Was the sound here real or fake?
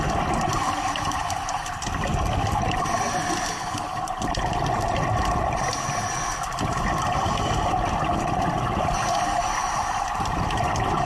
real